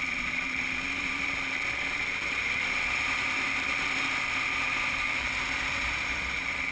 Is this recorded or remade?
remade